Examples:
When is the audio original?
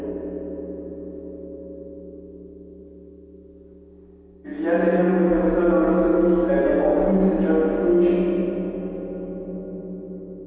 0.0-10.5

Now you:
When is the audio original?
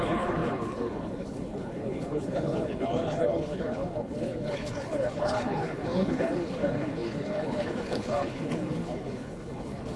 none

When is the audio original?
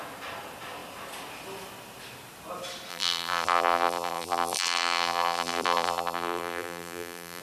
0.0-2.9